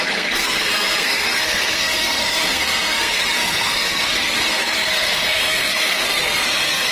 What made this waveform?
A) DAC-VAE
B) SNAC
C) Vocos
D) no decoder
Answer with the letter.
B